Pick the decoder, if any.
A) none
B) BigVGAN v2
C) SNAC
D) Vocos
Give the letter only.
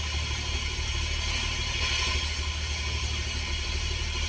A